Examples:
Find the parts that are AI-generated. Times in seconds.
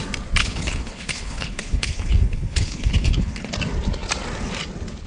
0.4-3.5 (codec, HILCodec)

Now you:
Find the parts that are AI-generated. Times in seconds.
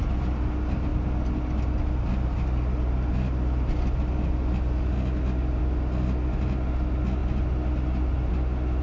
none